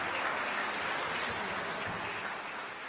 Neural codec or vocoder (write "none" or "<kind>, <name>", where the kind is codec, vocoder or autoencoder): none